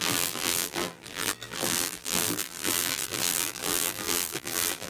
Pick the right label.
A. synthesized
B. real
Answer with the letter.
A